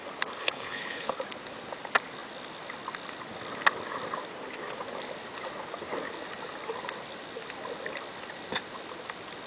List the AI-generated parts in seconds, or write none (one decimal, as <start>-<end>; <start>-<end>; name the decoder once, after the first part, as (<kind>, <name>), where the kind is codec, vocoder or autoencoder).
0.4-1.1 (codec, HILCodec)